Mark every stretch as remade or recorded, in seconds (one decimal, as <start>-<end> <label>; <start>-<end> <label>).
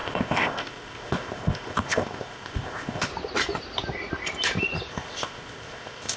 0.0-3.1 remade; 3.1-4.9 recorded; 4.9-6.2 remade